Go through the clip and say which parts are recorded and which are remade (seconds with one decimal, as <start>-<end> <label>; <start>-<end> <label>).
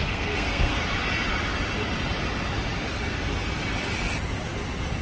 0.0-0.8 remade; 0.8-5.0 recorded